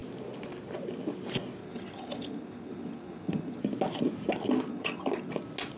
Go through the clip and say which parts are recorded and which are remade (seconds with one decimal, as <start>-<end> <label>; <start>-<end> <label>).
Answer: 0.0-1.6 recorded; 1.6-3.6 remade; 3.6-4.7 recorded; 4.7-5.3 remade; 5.3-5.8 recorded